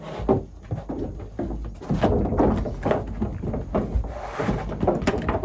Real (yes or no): yes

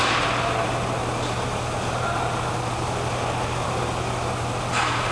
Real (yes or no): yes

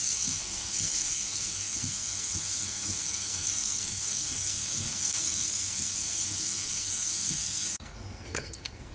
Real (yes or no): no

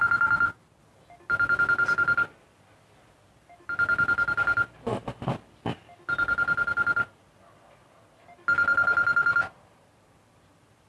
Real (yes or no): yes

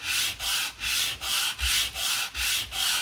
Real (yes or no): yes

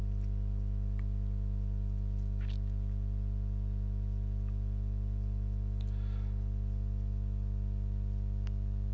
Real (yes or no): yes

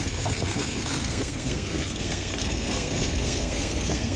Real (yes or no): no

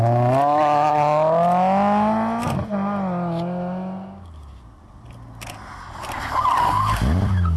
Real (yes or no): yes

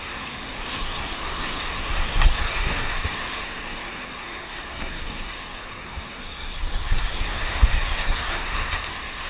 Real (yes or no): no